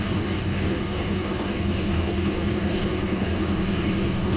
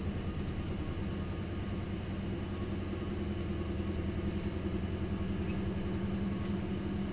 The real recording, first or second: second